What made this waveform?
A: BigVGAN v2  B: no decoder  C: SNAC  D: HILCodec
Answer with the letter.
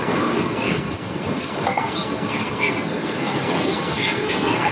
C